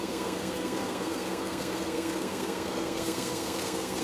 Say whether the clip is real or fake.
fake